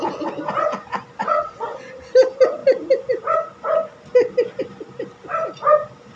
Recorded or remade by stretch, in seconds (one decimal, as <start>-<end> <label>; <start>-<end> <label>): 0.0-1.2 recorded; 1.2-1.8 remade; 1.8-6.2 recorded